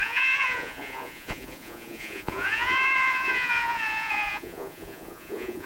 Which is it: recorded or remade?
remade